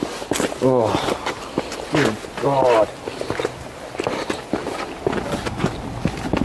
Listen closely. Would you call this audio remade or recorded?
recorded